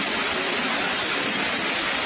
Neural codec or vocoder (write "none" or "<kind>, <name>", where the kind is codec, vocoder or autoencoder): none